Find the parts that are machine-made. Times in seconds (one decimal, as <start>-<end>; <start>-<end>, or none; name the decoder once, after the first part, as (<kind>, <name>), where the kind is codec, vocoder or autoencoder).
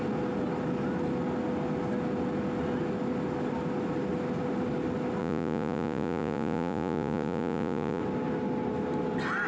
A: 5.2-8.0 (vocoder, Vocos)